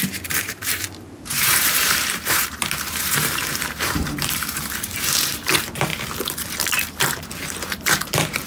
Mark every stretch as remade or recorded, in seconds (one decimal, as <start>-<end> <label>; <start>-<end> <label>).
0.0-5.9 remade; 5.9-7.4 recorded; 7.4-8.5 remade